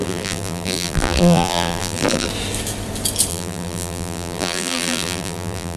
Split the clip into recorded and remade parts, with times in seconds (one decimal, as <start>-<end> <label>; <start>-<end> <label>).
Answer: 0.0-2.3 remade; 2.3-3.3 recorded; 3.3-5.8 remade